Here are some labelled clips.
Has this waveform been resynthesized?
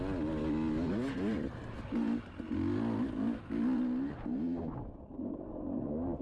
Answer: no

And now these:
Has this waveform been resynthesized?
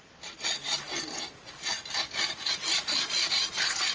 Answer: no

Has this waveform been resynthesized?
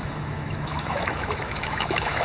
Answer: yes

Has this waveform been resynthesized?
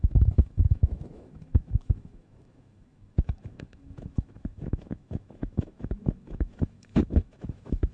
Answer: yes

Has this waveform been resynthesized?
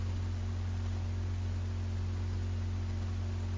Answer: no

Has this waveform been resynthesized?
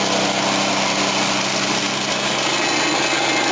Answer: no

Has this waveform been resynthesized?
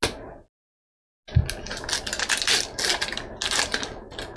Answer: no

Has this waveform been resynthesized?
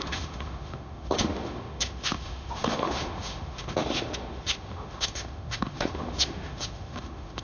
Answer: yes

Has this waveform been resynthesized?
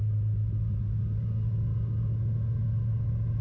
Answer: no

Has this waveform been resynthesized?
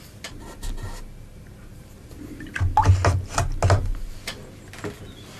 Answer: no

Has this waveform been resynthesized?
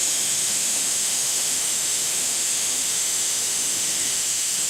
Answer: yes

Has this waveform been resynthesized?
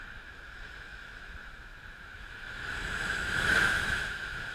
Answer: yes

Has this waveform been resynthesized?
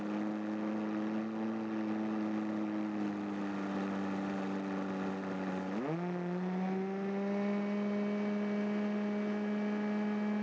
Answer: no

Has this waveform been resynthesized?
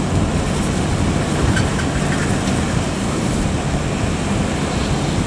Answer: no